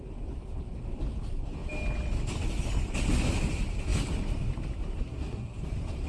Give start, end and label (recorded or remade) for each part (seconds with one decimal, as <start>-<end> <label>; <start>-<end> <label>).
0.0-5.0 recorded; 5.0-5.6 remade; 5.6-6.1 recorded